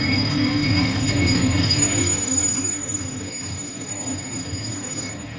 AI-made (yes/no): yes